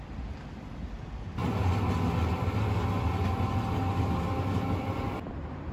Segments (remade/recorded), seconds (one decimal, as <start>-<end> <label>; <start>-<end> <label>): 0.0-1.4 remade; 1.4-4.8 recorded; 4.8-5.7 remade